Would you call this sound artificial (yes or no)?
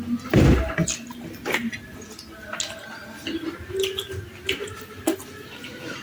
no